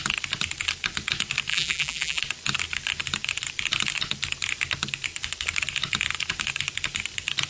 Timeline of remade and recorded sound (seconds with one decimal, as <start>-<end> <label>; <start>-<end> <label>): 0.0-1.5 recorded; 1.5-2.2 remade; 2.2-7.5 recorded